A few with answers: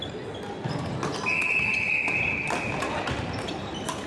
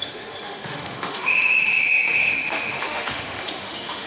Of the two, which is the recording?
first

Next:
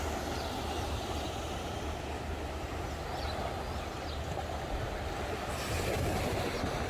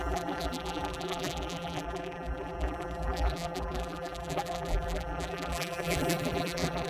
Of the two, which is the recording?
first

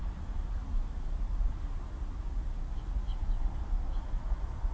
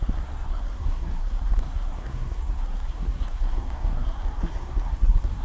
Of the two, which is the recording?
first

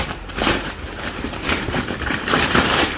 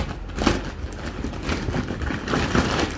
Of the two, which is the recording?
second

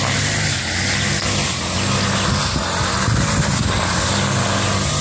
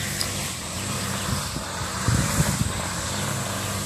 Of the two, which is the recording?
first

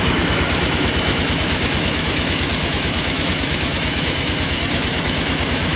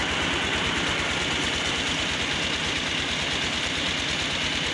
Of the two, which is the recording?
second